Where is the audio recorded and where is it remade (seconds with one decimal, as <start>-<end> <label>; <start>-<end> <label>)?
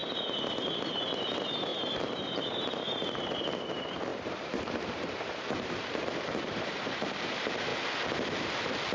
0.0-7.7 remade; 7.7-8.9 recorded